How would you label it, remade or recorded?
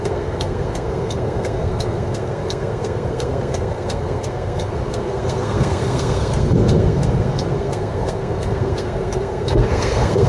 remade